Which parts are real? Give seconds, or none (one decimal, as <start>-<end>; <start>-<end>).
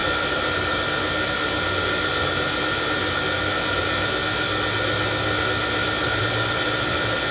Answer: 0.0-7.3